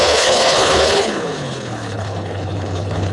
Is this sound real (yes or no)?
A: no